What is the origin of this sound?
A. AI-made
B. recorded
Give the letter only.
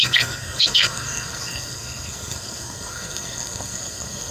A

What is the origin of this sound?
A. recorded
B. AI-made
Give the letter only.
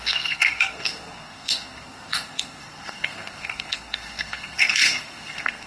B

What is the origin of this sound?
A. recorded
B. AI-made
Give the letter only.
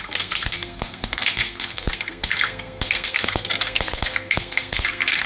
B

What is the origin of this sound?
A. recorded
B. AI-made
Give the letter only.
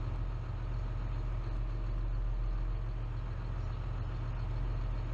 A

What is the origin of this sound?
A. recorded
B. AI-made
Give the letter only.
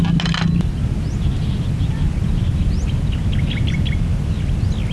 A